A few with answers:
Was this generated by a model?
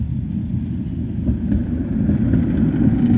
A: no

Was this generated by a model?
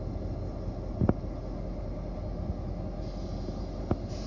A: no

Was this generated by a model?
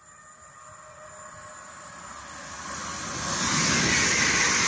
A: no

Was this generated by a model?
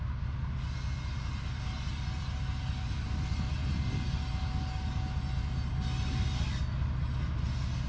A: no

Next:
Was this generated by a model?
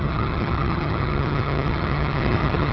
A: yes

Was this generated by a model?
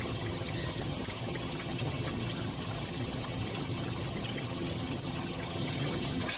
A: yes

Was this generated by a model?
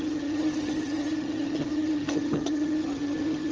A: yes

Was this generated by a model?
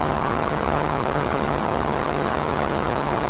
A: yes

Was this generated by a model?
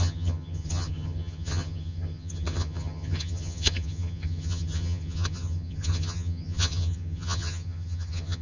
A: yes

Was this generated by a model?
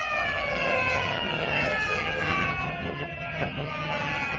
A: yes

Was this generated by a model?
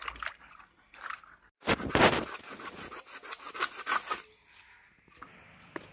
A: no